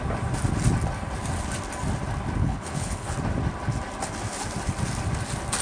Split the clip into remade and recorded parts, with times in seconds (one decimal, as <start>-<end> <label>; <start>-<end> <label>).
0.0-2.4 recorded; 2.4-3.1 remade; 3.1-5.6 recorded